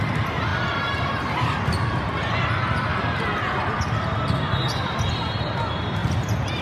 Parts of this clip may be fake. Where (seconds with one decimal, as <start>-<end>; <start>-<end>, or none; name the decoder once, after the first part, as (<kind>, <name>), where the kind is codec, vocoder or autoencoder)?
0.5-1.6 (vocoder, BigVGAN v2)